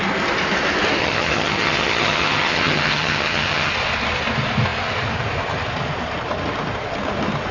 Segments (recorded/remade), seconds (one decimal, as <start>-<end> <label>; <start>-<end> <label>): 0.0-1.0 recorded; 1.0-3.7 remade; 3.7-7.5 recorded